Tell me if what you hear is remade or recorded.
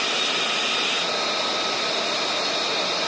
recorded